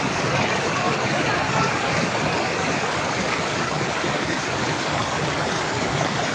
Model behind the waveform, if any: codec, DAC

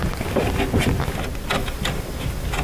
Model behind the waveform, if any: none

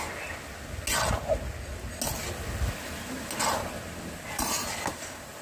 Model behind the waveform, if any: none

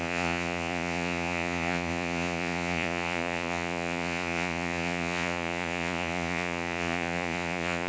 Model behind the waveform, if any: vocoder, Vocos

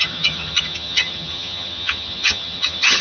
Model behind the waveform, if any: vocoder, HiFi-GAN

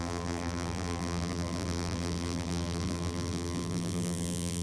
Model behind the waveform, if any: vocoder, BigVGAN v2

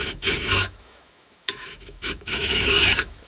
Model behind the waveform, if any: autoencoder, DAC-VAE